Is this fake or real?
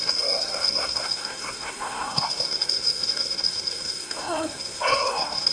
fake